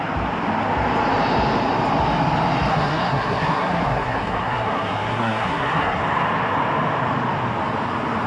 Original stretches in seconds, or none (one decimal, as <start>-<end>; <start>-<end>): 0.0-2.7; 6.0-8.3